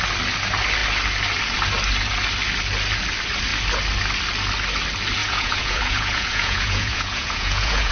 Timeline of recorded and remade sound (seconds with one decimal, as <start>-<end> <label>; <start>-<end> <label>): 0.0-5.2 recorded; 5.2-7.9 remade